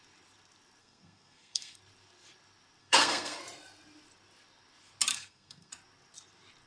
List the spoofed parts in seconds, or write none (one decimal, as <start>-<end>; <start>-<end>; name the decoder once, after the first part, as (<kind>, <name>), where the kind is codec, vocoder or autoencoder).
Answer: 0.8-1.8 (codec, SNAC); 2.8-3.4; 5.1-5.7